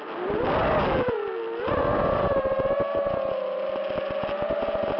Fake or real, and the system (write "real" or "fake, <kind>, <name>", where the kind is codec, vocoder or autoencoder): real